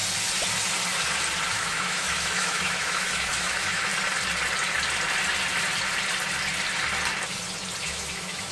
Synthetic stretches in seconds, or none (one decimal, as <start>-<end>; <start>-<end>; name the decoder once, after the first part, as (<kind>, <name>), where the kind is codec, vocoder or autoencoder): 1.5-3.9 (autoencoder, DAC-VAE); 7.8-8.5